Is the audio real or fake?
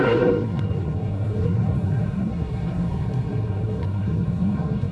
fake